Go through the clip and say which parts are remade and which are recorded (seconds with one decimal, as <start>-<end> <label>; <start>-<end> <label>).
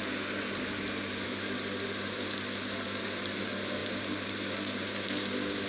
0.0-3.8 recorded; 3.8-5.2 remade; 5.2-5.7 recorded